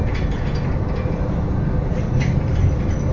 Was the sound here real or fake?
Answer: fake